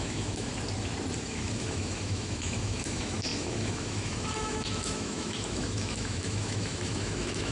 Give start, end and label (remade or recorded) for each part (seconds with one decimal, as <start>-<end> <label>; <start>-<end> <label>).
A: 0.0-0.5 remade; 0.5-1.2 recorded; 1.2-7.5 remade